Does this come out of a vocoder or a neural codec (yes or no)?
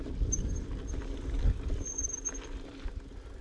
no